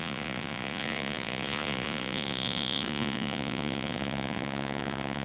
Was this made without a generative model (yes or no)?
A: no